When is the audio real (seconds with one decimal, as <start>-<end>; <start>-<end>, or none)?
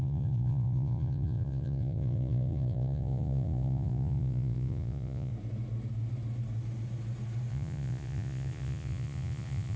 5.3-7.5